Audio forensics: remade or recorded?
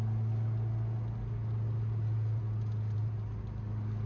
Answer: recorded